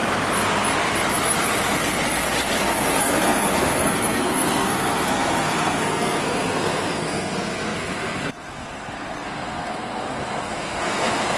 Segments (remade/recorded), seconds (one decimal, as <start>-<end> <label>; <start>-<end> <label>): 0.0-3.0 recorded; 3.0-11.4 remade